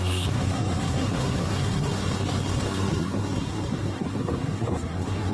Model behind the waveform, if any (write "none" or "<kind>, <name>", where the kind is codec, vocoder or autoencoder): codec, SNAC